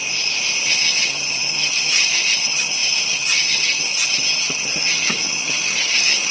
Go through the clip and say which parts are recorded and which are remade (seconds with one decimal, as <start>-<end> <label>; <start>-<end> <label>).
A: 0.0-0.6 recorded; 0.6-6.3 remade